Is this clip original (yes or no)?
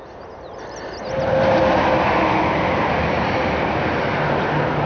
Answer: yes